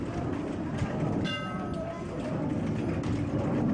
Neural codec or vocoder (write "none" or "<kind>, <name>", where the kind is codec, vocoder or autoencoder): none